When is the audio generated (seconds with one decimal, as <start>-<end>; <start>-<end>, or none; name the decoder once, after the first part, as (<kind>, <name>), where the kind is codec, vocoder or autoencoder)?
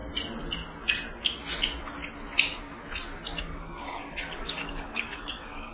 3.4-5.7 (codec, DAC)